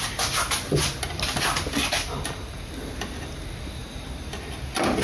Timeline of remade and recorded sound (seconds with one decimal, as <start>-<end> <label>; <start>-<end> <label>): 0.0-5.0 recorded